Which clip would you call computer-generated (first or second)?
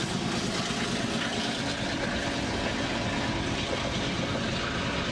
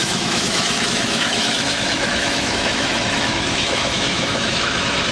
second